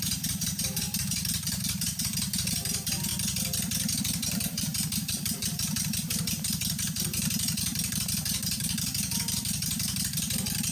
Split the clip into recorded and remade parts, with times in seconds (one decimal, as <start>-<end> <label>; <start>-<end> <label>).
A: 0.0-3.1 remade; 3.1-4.0 recorded; 4.0-10.7 remade